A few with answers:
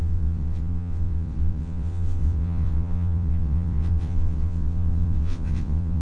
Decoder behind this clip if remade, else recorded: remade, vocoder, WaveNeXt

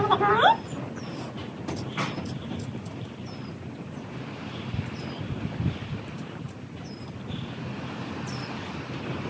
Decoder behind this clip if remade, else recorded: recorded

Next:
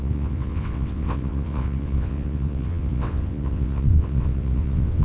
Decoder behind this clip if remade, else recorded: remade, vocoder, WaveNeXt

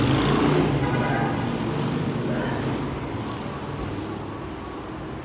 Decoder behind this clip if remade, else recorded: recorded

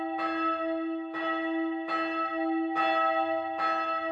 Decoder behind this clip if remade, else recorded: recorded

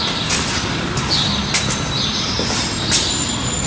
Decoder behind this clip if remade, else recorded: recorded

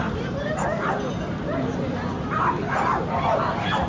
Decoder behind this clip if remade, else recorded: recorded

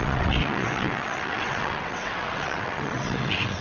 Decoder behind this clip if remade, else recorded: remade, vocoder, WaveNeXt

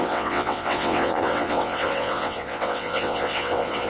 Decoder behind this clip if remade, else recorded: remade, vocoder, WaveNeXt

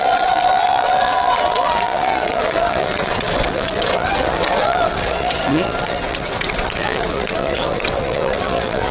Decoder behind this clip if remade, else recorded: remade, vocoder, WaveNeXt